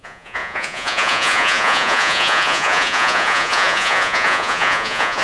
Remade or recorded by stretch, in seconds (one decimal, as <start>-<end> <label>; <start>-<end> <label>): 0.0-5.2 remade